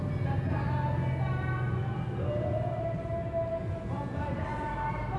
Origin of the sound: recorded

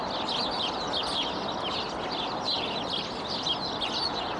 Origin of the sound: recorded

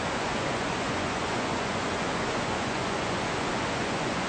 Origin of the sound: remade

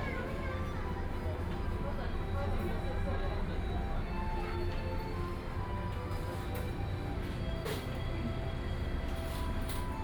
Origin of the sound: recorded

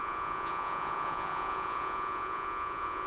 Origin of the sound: remade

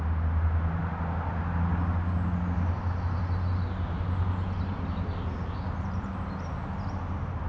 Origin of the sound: recorded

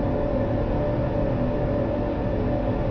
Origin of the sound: recorded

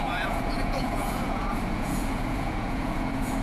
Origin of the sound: remade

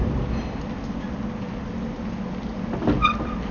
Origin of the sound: recorded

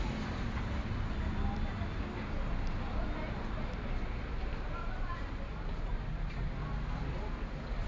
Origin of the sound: recorded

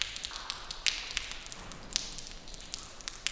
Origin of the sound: recorded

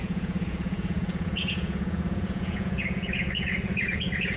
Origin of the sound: remade